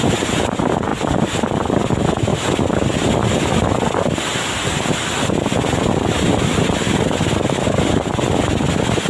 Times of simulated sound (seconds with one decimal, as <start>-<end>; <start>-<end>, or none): 0.9-1.8